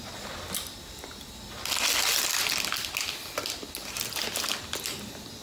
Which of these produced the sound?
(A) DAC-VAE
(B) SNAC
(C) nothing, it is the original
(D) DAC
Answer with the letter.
C